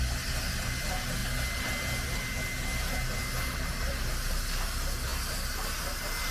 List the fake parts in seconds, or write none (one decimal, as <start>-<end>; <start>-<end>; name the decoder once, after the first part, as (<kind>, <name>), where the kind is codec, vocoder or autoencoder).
none